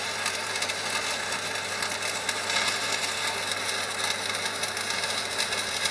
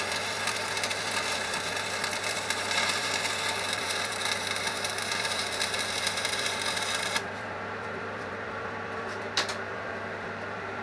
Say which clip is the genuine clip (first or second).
first